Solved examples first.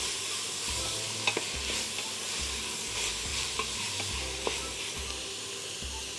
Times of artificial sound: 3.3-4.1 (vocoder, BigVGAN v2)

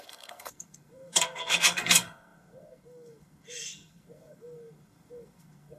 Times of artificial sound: 0.0-5.8 (codec, SNAC)

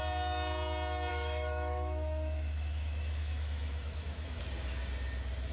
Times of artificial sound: 1.1-4.4 (autoencoder, DAC-VAE)

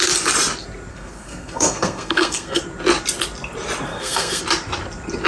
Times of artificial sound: 0.9-2.6 (codec, SNAC); 3.9-4.4

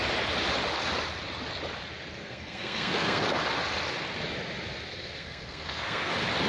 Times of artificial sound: 2.2-3.2 (codec, SNAC); 4.9-6.1

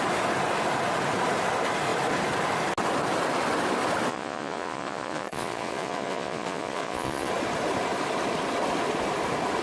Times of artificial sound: 4.1-7.3 (vocoder, Vocos)

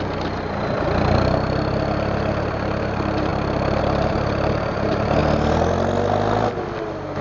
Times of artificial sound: 0.0-5.2 (vocoder, BigVGAN v2)